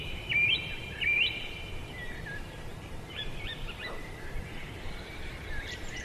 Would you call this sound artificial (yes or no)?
yes